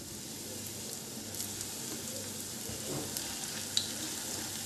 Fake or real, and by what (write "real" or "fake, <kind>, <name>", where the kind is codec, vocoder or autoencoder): real